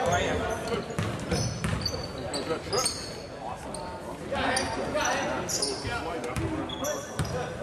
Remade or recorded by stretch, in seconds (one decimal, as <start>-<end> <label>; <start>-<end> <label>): 0.0-7.6 recorded